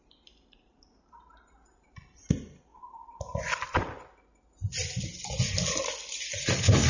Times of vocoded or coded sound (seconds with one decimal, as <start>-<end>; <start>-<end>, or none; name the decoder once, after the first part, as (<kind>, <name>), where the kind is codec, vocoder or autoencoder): 0.0-2.7 (vocoder, BigVGAN v2)